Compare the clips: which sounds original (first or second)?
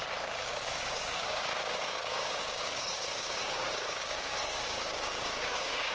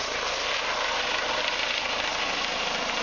second